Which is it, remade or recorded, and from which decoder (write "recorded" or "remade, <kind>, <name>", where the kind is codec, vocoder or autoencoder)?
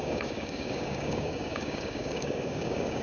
remade, codec, DAC